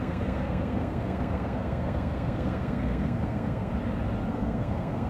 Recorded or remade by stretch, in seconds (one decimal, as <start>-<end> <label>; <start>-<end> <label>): 0.0-3.7 remade; 3.7-4.3 recorded; 4.3-5.1 remade